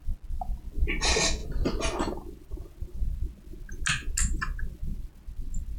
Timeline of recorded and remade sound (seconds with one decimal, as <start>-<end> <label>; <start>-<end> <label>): 0.0-1.4 recorded; 1.4-2.5 remade; 2.5-5.8 recorded